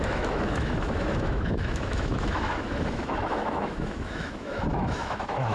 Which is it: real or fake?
fake